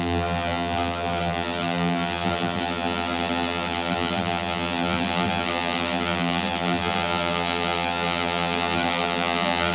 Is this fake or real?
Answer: fake